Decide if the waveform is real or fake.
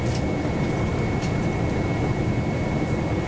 real